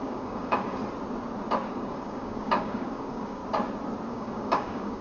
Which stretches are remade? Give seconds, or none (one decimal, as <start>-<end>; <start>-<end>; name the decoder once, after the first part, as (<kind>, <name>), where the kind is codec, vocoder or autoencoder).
0.0-0.8 (codec, DAC); 1.7-3.4; 4.1-5.0